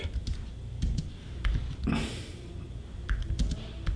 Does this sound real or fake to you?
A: real